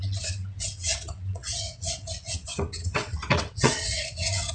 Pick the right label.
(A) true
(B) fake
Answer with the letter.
B